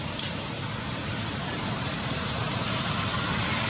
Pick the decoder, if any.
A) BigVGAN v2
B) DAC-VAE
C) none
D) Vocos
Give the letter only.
A